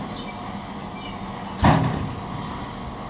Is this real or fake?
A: real